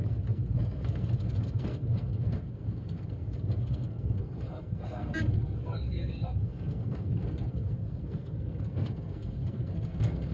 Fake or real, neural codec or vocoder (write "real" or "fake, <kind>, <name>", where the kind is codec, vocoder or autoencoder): fake, codec, SNAC